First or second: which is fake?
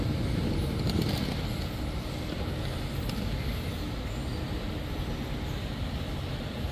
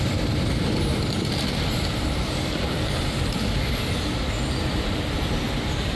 second